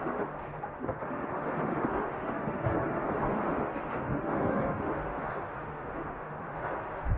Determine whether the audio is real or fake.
fake